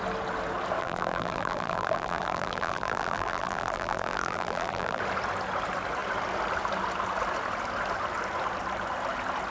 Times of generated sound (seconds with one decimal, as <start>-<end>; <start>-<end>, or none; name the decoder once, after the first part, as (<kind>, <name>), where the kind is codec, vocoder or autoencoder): 0.8-5.0 (vocoder, BigVGAN v2)